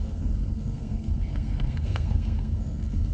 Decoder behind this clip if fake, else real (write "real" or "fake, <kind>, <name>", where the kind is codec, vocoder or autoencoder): fake, codec, SNAC